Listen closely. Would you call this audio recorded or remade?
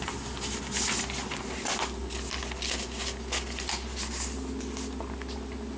recorded